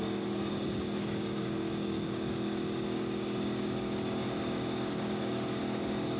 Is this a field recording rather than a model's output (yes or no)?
no